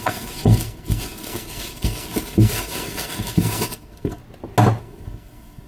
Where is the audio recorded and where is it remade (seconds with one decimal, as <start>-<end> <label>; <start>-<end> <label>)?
0.0-4.2 remade; 4.2-4.8 recorded; 4.8-5.7 remade